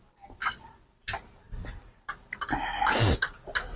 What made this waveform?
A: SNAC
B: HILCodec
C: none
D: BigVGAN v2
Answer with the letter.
C